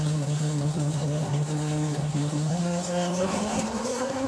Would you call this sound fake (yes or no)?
yes